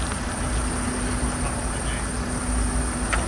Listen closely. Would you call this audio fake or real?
real